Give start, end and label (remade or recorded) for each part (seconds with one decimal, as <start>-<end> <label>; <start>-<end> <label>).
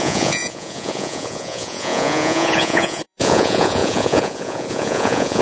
0.0-5.4 remade